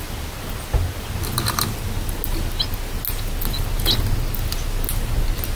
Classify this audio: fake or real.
real